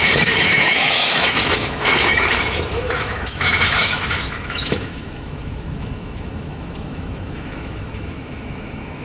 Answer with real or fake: fake